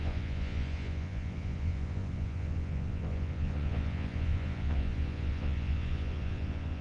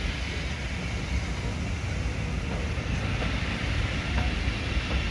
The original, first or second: second